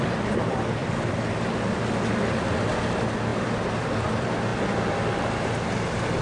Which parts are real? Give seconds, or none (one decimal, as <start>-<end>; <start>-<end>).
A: 0.0-6.2